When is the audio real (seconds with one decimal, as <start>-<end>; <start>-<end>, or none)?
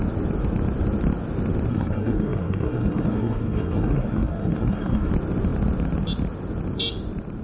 0.0-1.7; 5.1-7.4